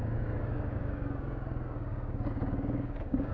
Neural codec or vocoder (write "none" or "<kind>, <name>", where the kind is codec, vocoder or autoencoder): codec, DAC